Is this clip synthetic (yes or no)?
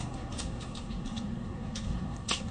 yes